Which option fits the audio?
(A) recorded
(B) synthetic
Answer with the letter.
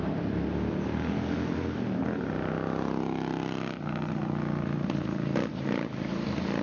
A